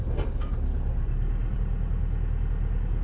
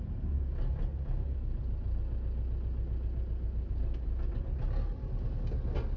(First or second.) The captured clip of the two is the second